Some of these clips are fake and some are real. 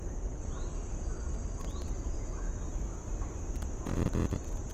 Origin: real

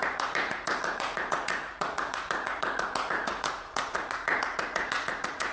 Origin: fake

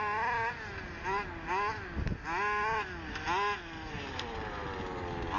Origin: real